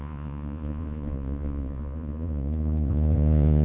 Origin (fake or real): fake